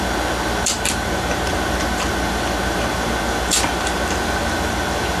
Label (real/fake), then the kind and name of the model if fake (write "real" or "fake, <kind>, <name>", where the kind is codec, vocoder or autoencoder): real